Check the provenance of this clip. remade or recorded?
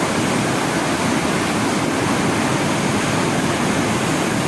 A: recorded